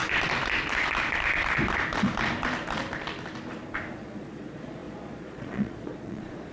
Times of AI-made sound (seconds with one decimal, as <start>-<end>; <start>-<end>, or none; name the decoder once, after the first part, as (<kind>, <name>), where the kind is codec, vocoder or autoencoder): 3.9-6.5 (vocoder, Vocos)